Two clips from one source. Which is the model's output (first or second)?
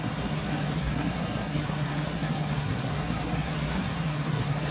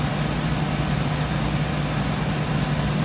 first